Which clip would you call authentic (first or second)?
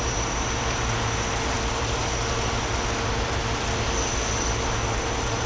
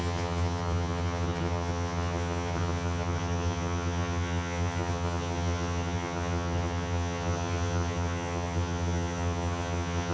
first